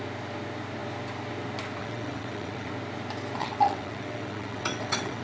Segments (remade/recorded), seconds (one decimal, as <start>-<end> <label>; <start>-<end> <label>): 0.0-1.8 recorded; 1.8-2.7 remade; 2.7-3.4 recorded; 3.4-5.2 remade